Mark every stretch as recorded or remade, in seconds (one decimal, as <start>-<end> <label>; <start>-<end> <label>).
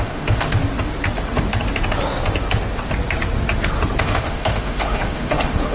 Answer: 0.0-0.6 remade; 0.6-4.0 recorded; 4.0-5.7 remade